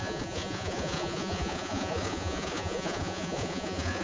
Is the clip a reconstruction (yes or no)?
yes